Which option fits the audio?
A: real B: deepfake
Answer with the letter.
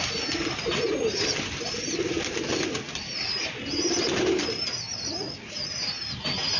A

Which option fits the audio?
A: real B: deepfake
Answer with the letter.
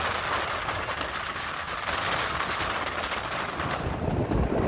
A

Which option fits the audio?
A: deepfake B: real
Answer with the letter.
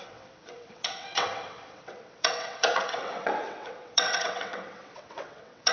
A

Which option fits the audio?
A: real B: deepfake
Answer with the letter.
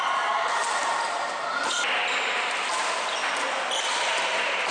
A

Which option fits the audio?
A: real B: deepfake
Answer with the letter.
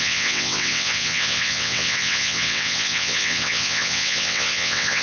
B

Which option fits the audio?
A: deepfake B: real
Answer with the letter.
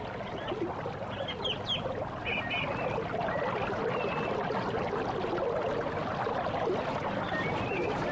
B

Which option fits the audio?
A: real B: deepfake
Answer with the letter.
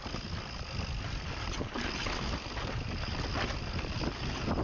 A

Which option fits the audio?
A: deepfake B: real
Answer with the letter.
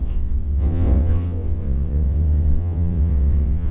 A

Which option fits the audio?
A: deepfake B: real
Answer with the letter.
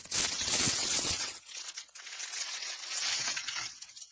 A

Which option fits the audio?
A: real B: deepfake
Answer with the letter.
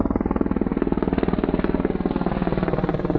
A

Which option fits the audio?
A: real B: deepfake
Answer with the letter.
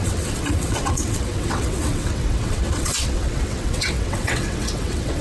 B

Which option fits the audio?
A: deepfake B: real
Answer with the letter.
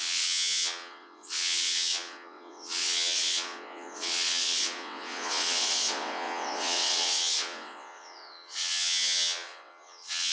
A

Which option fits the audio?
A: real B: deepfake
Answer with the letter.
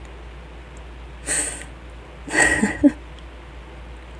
A